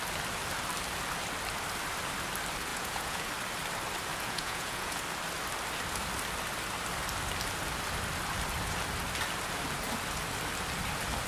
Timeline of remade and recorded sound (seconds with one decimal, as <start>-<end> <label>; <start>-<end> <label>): 0.0-2.7 recorded; 2.7-3.3 remade; 3.3-4.1 recorded; 4.1-5.0 remade; 5.0-11.3 recorded